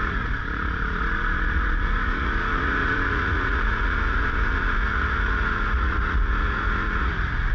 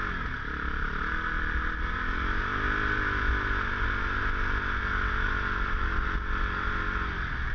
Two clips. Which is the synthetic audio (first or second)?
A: first